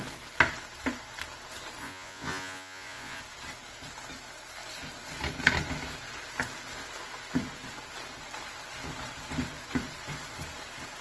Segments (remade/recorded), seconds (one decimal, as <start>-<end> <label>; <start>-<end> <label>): 0.0-1.8 recorded; 1.8-3.2 remade; 3.2-11.0 recorded